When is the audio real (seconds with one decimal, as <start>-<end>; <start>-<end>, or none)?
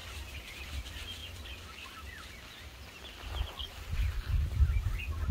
0.7-5.3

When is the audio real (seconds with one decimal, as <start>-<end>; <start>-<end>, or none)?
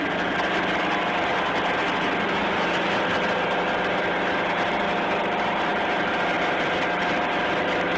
0.0-5.7; 6.8-8.0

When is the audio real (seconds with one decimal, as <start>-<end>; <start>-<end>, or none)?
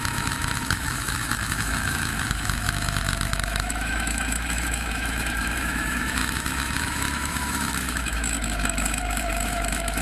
none